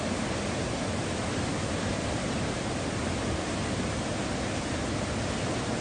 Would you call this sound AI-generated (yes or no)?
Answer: no